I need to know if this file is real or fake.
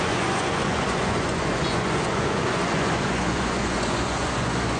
fake